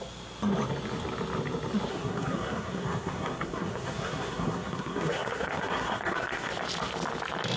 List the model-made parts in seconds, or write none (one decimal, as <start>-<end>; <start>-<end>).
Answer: 1.9-6.5